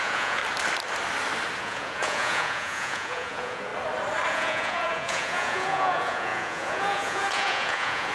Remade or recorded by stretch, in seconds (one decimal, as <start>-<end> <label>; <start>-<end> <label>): 0.0-0.4 remade; 0.4-1.6 recorded; 1.6-3.7 remade; 3.7-4.3 recorded; 4.3-8.1 remade

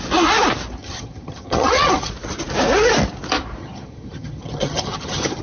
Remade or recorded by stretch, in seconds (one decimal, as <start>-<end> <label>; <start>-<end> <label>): 0.0-0.8 recorded; 0.8-2.1 remade; 2.1-3.6 recorded; 3.6-5.4 remade

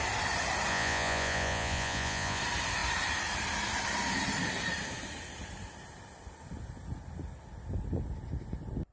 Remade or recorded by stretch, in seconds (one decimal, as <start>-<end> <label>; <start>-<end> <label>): 0.0-0.7 recorded; 0.7-2.4 remade; 2.4-8.9 recorded

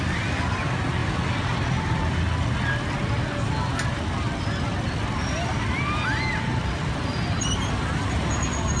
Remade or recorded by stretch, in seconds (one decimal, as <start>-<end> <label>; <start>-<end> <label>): 0.0-8.8 recorded

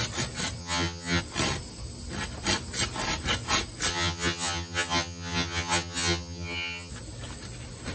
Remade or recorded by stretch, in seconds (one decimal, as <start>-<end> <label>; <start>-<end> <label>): 0.0-0.6 recorded; 0.6-1.2 remade; 1.2-3.9 recorded; 3.9-6.9 remade; 6.9-7.9 recorded

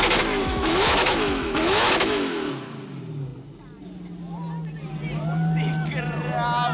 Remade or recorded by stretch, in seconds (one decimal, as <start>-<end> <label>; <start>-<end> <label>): 0.0-0.4 recorded; 0.4-2.5 remade; 2.5-6.7 recorded

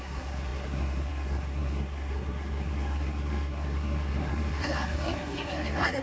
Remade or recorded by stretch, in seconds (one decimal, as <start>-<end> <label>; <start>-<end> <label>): 0.0-6.0 remade

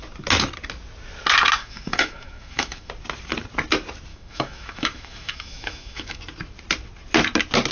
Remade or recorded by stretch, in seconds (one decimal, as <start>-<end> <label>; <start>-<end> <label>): 0.0-1.6 recorded; 1.6-2.9 remade; 2.9-4.1 recorded; 4.1-6.2 remade; 6.2-7.7 recorded